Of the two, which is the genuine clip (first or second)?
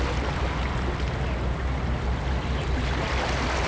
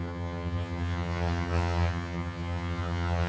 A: first